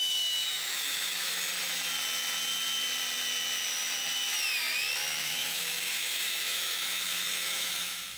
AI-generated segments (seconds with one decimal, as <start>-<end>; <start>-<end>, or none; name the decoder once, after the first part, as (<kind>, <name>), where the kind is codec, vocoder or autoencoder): 0.0-1.5 (autoencoder, DAC-VAE); 5.2-8.2